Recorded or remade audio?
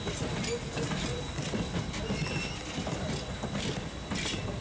recorded